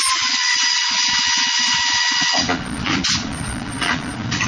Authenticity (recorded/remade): remade